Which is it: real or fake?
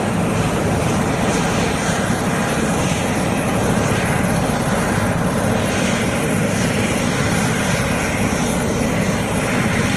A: real